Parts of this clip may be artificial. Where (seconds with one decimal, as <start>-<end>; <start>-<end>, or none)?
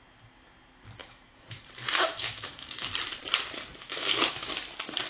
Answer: 1.0-1.6; 2.1-2.9; 3.8-4.5